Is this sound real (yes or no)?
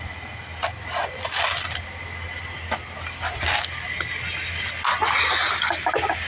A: yes